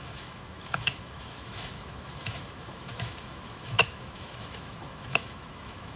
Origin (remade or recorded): remade